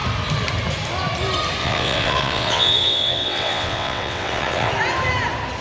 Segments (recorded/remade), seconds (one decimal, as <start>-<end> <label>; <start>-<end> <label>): 0.0-1.6 recorded; 1.6-4.7 remade; 4.7-5.6 recorded